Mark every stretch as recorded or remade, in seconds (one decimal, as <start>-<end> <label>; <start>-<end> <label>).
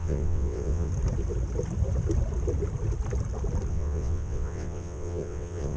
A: 0.0-0.9 remade; 0.9-3.7 recorded; 3.7-5.8 remade